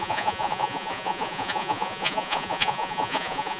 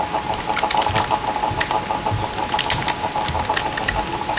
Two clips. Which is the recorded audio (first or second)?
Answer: second